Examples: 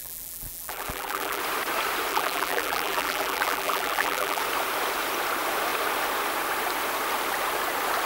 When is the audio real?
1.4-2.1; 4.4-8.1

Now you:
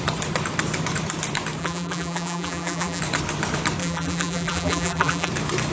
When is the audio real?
0.0-1.6; 3.0-3.8; 5.3-5.7

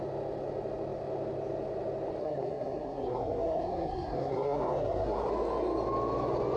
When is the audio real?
0.0-2.2; 5.3-6.6

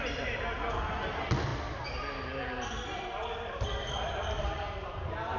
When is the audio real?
0.0-5.4

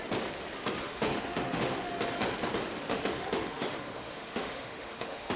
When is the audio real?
0.0-0.8; 1.9-2.9

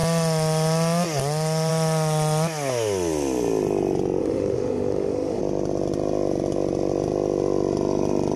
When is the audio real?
0.0-4.2; 5.4-8.4

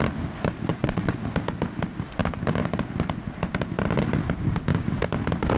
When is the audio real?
0.0-0.7; 1.2-5.6

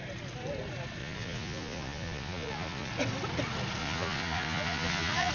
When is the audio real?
0.0-1.0; 2.9-3.8